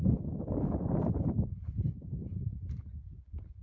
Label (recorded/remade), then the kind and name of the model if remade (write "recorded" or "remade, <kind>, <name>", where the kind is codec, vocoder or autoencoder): recorded